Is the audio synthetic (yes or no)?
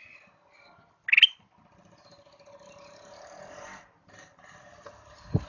no